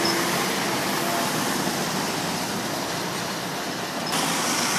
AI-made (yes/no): no